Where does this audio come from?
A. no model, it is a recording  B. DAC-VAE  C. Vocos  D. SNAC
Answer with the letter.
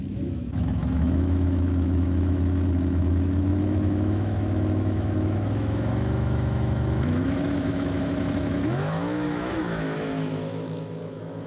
B